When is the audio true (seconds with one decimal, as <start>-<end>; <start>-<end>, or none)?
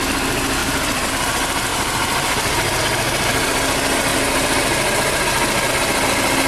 0.0-0.6; 1.1-1.7; 2.8-6.5